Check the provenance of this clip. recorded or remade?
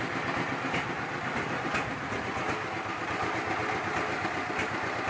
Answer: recorded